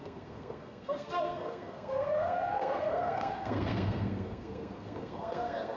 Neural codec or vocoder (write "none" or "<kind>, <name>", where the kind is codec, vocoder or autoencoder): codec, SNAC